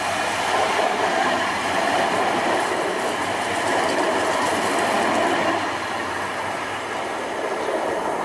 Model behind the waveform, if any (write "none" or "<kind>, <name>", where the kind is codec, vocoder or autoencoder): none